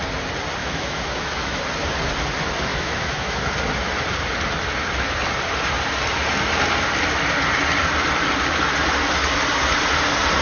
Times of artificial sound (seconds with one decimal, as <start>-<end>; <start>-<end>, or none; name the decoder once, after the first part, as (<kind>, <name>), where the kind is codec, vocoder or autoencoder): 0.6-1.6 (autoencoder, DAC-VAE); 2.7-3.4